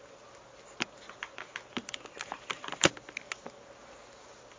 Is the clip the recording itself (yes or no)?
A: yes